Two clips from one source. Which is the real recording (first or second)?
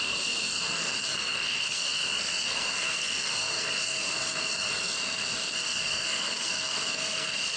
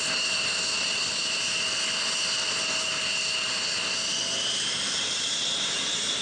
second